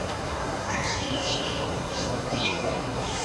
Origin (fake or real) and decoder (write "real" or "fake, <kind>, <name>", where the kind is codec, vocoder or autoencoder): fake, codec, SNAC